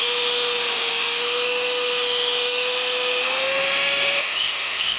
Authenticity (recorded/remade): remade